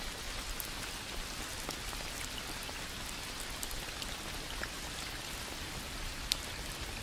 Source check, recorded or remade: recorded